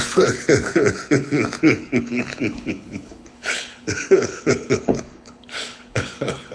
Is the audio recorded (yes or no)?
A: no